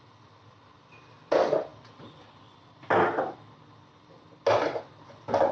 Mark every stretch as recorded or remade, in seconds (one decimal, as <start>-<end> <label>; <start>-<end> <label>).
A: 0.0-5.5 recorded